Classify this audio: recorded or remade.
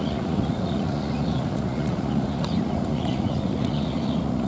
remade